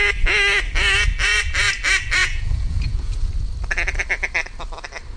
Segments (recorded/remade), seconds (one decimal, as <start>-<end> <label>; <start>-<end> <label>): 0.0-2.2 recorded; 2.2-3.3 remade; 3.3-5.2 recorded